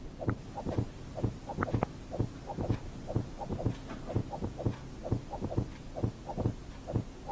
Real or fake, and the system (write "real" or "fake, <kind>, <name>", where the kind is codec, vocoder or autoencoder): real